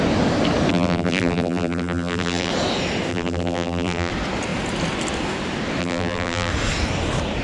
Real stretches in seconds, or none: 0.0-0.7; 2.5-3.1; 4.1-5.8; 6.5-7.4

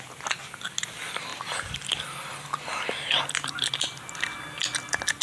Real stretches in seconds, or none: 0.0-5.2